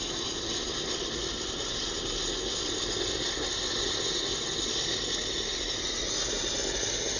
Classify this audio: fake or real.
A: real